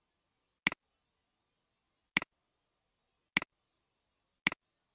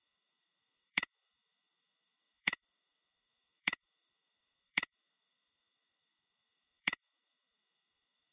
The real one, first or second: first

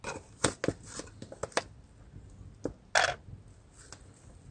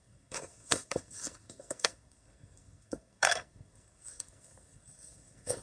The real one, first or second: first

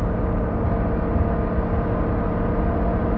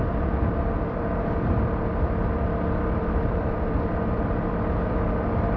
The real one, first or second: first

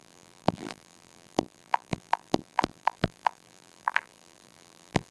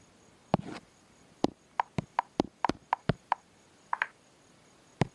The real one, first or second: second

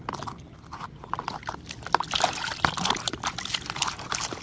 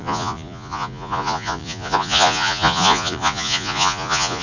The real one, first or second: first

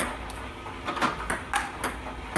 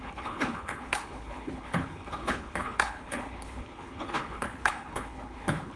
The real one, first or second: first